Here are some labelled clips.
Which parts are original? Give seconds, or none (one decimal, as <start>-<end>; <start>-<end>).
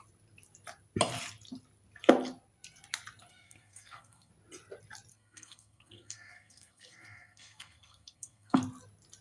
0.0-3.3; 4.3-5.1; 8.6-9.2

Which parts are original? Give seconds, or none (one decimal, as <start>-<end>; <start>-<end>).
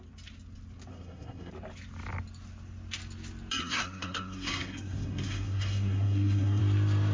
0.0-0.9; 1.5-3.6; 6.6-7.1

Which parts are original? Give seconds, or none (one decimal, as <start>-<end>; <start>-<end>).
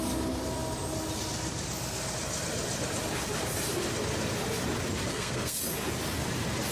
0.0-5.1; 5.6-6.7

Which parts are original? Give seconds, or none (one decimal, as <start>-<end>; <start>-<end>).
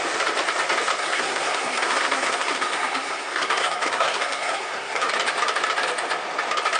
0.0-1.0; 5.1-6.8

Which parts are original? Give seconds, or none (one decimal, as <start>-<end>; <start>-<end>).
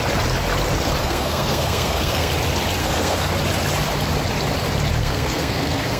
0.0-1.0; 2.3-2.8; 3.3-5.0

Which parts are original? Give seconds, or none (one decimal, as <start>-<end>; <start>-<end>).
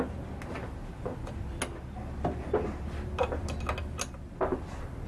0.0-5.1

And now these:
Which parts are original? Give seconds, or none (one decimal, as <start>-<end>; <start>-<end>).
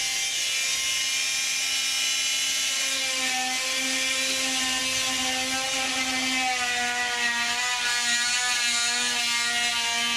0.0-10.2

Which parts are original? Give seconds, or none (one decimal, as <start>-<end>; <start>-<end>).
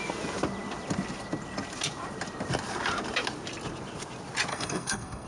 0.0-4.5